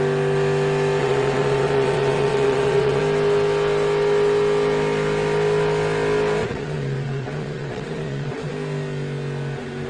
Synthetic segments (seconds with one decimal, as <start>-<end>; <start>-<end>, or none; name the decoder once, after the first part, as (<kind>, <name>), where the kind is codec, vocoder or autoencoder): 1.0-3.0 (vocoder, WaveNeXt); 6.4-8.5